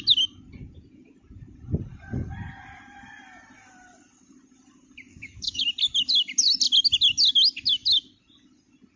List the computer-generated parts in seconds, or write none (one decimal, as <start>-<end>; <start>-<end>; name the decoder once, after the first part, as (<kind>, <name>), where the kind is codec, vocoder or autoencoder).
5.1-5.6 (codec, DAC)